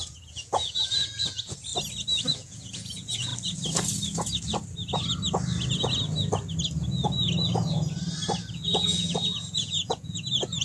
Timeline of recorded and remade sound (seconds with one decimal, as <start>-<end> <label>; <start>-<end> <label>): 0.0-1.7 remade; 1.7-2.3 recorded; 2.3-3.3 remade; 3.3-8.5 recorded; 8.5-10.6 remade